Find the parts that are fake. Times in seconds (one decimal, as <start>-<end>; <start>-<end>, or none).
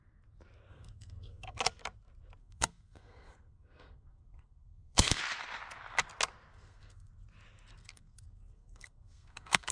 0.7-1.6; 2.4-5.2; 6.5-7.1; 7.8-9.7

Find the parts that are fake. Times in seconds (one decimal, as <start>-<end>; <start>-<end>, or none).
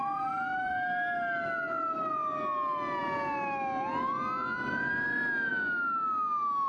none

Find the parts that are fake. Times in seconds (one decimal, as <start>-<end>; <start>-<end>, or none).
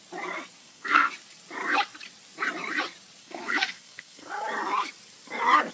0.6-1.1; 3.2-4.3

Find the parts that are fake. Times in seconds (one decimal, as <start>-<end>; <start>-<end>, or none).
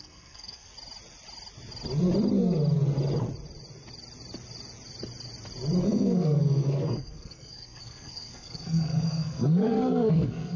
0.0-0.7; 5.8-10.6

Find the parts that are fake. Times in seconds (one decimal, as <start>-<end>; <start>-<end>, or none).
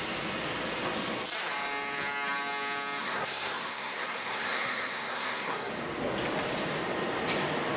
3.0-5.7